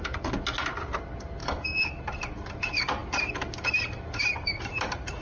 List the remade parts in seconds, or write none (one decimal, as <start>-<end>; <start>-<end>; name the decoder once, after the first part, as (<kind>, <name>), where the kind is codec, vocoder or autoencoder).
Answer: 1.4-2.0 (codec, DAC)